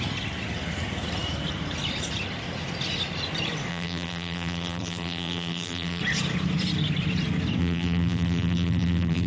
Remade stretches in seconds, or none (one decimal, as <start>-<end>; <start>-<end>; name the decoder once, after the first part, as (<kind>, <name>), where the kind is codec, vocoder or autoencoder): 3.7-6.0 (vocoder, BigVGAN v2); 7.6-9.3

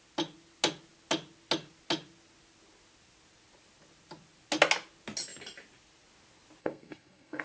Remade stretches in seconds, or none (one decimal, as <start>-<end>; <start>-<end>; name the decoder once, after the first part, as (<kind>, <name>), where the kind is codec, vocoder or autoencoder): 6.6-7.4 (codec, SNAC)

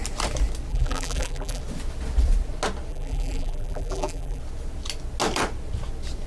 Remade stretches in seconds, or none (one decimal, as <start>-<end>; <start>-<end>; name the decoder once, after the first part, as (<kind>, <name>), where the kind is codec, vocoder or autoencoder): 0.7-1.6 (vocoder, BigVGAN v2); 2.9-4.4

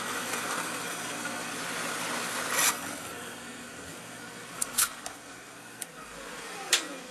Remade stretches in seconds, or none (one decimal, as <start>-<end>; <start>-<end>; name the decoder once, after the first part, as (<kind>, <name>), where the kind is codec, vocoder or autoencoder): 0.0-1.5 (codec, SNAC); 2.7-7.1

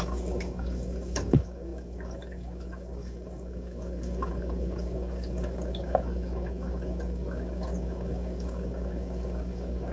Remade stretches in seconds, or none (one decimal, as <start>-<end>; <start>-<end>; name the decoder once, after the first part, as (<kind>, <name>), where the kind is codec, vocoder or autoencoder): 0.0-9.9 (codec, DAC)

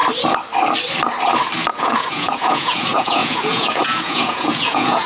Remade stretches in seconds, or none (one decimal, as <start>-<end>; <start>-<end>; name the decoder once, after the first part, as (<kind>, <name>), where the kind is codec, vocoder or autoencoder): 1.7-5.1 (vocoder, Vocos)

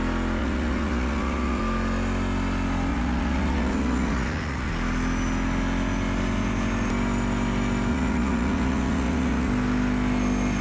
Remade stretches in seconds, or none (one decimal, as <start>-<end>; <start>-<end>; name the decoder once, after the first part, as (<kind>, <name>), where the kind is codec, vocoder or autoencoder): 0.4-1.6 (vocoder, Vocos); 2.9-4.7; 7.9-9.5

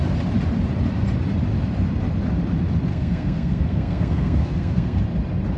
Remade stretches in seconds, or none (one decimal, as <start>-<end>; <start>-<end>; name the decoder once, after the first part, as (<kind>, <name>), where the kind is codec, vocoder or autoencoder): 2.9-5.0 (codec, SNAC)